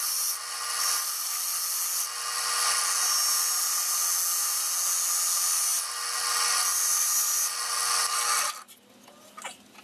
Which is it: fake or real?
real